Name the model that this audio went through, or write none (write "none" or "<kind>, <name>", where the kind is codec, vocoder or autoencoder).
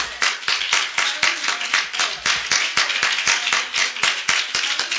none